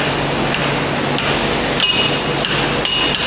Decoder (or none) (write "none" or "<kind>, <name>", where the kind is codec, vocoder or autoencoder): none